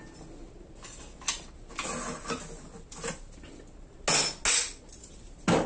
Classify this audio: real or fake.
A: real